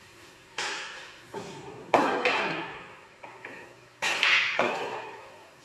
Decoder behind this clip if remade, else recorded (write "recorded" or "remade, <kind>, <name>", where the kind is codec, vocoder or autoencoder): remade, codec, SNAC